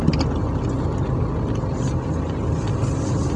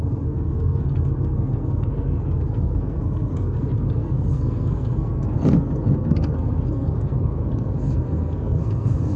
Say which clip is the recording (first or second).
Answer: first